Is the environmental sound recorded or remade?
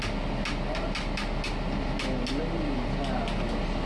recorded